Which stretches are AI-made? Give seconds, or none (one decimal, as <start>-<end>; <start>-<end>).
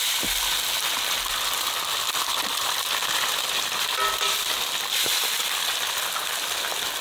3.0-3.5